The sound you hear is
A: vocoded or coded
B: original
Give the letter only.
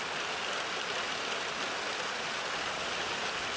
B